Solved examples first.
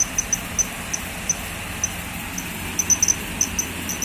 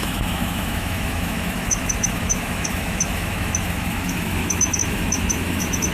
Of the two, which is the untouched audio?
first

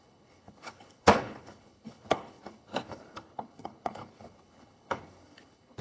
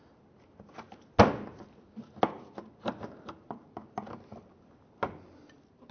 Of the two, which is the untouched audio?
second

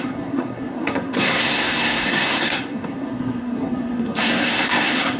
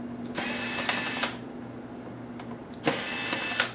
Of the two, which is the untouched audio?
second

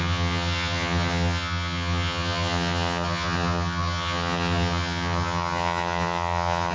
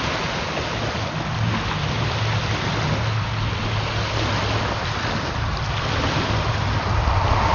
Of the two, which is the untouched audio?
second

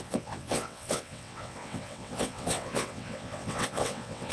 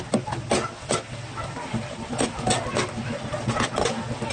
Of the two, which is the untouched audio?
second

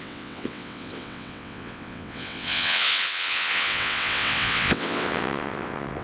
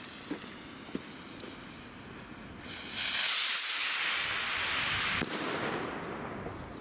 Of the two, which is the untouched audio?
second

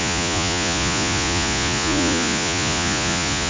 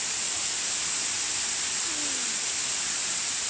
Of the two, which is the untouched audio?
second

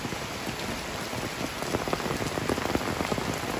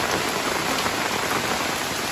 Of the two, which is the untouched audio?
first